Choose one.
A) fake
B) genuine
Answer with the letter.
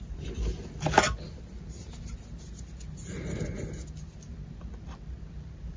B